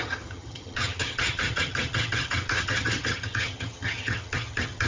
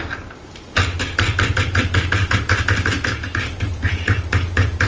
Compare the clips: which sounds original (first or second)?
second